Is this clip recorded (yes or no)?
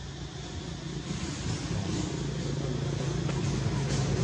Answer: yes